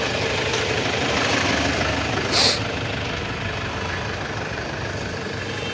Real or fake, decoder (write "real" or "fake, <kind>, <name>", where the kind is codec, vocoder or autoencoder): fake, vocoder, BigVGAN v2